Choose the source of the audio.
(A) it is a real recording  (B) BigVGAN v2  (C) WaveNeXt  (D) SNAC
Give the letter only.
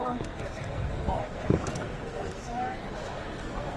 D